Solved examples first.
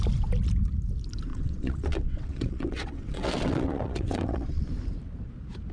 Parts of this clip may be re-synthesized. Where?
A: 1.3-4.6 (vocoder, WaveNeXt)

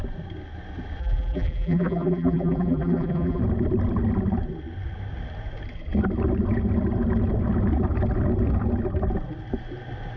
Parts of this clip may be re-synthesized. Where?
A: 1.0-3.4 (vocoder, BigVGAN v2)

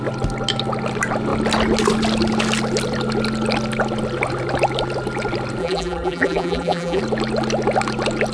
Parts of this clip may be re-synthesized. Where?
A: 5.6-7.0 (vocoder, BigVGAN v2)

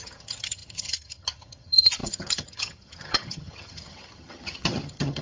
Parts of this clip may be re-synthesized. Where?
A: 0.0-5.2 (vocoder, HiFi-GAN)